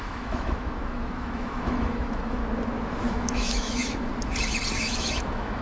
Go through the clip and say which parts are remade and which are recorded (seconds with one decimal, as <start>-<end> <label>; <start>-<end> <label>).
0.0-2.4 remade; 2.4-3.1 recorded; 3.1-4.1 remade; 4.1-4.8 recorded; 4.8-5.6 remade